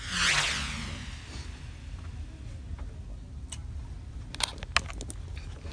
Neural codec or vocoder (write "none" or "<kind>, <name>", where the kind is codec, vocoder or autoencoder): none